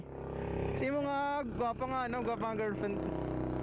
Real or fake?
real